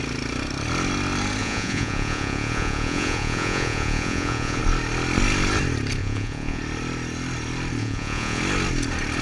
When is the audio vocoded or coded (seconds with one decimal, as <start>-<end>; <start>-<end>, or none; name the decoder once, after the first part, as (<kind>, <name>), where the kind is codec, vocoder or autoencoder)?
1.4-4.6 (vocoder, Vocos); 6.0-6.6; 7.8-8.4

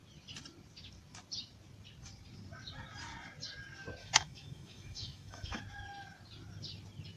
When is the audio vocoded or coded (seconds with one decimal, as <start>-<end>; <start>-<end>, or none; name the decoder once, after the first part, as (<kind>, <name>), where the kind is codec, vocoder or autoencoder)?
4.0-5.6 (autoencoder, DAC-VAE)

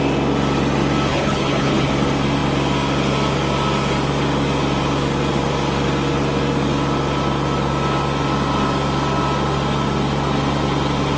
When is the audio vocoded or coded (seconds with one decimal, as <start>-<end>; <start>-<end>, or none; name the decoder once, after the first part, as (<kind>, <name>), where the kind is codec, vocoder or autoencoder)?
1.1-1.9 (codec, HILCodec)

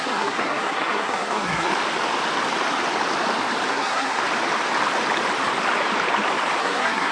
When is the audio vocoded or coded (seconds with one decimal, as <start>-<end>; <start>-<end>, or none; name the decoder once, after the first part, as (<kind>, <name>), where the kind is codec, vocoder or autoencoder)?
0.0-1.7 (codec, SNAC); 3.7-4.2; 6.6-7.1

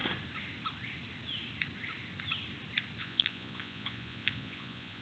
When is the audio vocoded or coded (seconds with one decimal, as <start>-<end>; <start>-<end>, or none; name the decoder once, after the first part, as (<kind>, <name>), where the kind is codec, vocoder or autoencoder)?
3.0-5.0 (vocoder, Vocos)